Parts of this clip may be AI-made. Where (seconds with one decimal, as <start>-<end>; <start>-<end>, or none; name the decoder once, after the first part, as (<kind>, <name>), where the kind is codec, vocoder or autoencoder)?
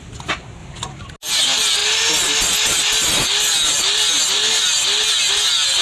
none